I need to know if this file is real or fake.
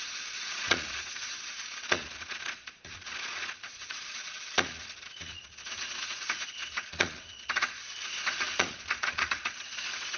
fake